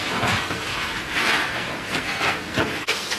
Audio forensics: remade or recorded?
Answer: remade